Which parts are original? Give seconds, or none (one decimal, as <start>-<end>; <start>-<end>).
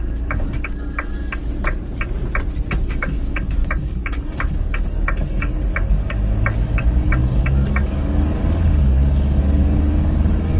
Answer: 1.4-2.8